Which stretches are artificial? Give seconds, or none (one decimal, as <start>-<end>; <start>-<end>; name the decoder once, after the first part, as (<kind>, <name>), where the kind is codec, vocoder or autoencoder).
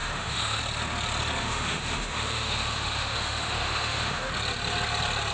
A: 0.0-0.6 (autoencoder, DAC-VAE); 1.4-4.3